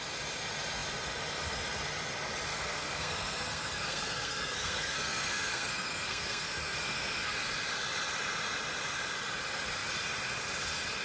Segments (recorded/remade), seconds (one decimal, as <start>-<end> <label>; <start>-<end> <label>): 0.0-2.5 recorded; 2.5-7.3 remade; 7.3-11.0 recorded